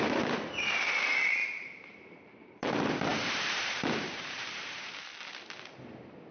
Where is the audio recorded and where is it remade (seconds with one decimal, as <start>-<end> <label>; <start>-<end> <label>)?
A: 0.0-1.4 recorded; 1.4-2.7 remade; 2.7-3.1 recorded; 3.1-4.9 remade; 4.9-6.3 recorded